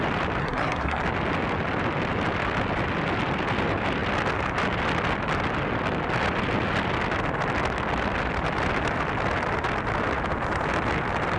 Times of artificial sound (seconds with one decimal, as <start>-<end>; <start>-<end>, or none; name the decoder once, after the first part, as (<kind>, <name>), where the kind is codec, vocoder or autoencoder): 0.4-1.0 (codec, SNAC)